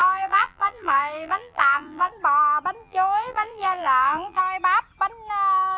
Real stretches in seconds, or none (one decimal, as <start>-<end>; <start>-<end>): 2.1-2.8; 4.4-5.8